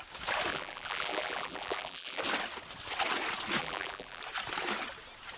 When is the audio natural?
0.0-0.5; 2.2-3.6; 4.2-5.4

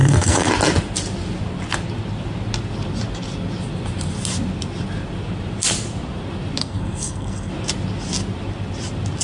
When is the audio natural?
0.5-6.6; 7.5-9.2

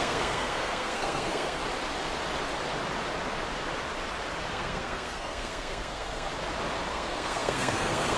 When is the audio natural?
1.6-4.5; 6.3-6.9

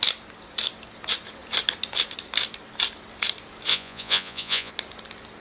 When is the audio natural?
0.0-3.7; 4.7-5.4

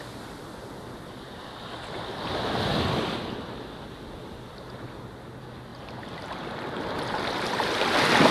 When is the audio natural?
0.0-8.3

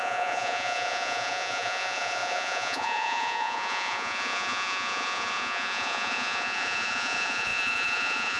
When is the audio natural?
none

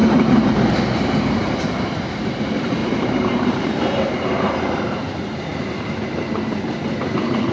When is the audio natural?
0.0-2.8; 4.5-7.5

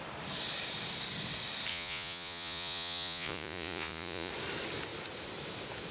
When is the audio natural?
0.0-1.7; 4.3-5.9